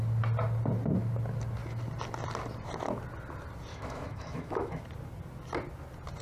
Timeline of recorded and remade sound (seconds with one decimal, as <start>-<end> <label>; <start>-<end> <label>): 0.0-3.7 recorded; 3.7-4.8 remade; 4.8-6.2 recorded